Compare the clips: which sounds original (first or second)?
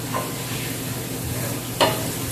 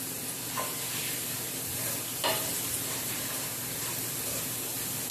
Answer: first